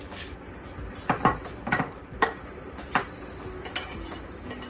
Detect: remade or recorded recorded